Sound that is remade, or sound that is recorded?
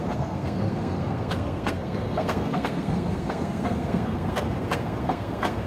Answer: remade